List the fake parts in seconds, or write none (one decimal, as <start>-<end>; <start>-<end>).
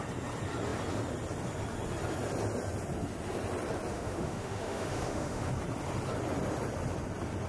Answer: 3.9-5.5